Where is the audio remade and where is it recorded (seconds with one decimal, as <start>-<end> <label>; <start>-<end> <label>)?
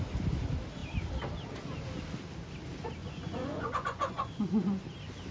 0.0-3.0 recorded; 3.0-4.3 remade; 4.3-5.3 recorded